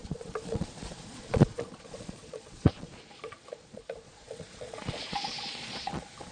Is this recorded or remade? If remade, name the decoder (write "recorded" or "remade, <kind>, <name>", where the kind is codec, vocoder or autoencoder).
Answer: remade, vocoder, Vocos